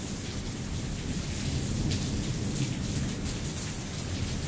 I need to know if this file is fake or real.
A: real